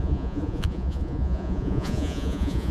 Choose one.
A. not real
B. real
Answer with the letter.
A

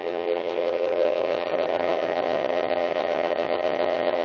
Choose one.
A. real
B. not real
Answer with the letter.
B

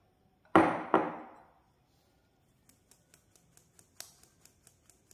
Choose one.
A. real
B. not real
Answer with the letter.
A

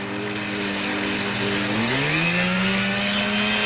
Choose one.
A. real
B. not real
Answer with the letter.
A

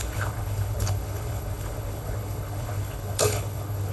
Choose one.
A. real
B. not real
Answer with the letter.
B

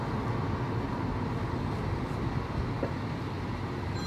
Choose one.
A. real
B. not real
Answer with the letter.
A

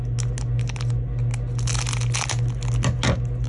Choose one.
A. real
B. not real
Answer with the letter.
A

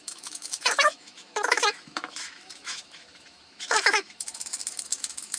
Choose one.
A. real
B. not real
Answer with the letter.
B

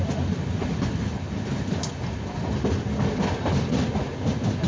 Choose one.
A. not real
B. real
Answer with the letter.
B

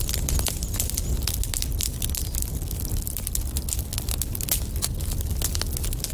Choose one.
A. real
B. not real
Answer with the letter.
A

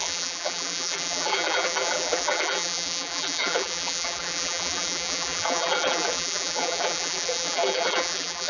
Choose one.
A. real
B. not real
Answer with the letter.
B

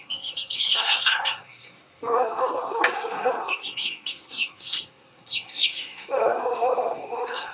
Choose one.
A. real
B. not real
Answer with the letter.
B